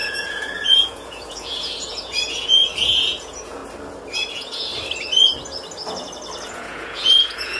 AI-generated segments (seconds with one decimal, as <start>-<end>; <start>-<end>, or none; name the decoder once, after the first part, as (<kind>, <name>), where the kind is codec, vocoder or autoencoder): 0.0-3.6 (vocoder, Vocos); 4.3-4.7; 6.5-7.6